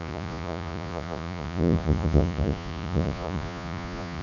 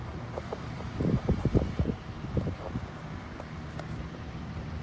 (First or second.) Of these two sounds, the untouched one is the second